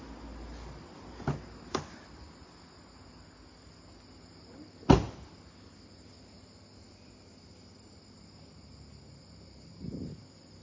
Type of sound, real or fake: real